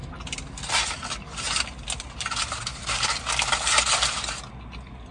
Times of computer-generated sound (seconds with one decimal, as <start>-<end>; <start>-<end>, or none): none